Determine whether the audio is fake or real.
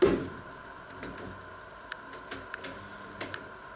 real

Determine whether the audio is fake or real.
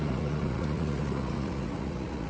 fake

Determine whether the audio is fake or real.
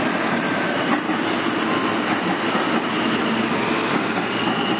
real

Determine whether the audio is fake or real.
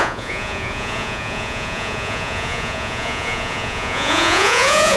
fake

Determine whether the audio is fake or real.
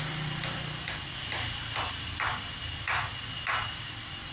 real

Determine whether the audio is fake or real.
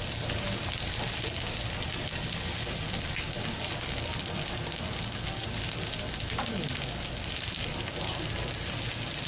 real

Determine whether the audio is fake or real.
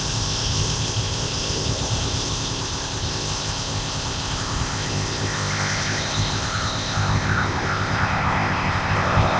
fake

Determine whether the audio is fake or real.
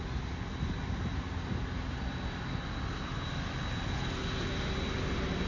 real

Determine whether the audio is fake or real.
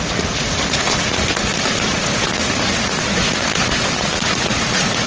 fake